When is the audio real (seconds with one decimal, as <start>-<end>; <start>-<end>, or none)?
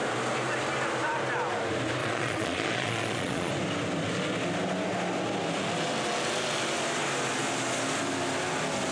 0.0-2.0; 3.5-8.9